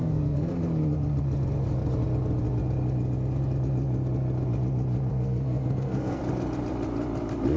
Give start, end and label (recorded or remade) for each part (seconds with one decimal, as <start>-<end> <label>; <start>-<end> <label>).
0.0-0.5 remade; 0.5-5.1 recorded; 5.1-6.2 remade; 6.2-7.6 recorded